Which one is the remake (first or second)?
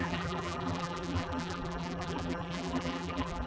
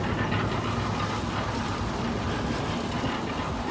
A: first